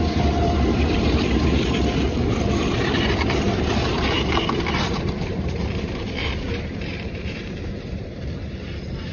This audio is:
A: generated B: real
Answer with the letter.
A